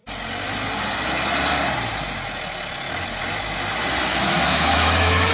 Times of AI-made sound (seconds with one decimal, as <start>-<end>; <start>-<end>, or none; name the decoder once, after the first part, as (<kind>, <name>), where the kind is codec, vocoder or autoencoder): 4.1-5.3 (autoencoder, DAC-VAE)